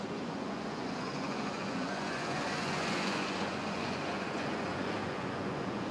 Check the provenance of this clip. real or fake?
fake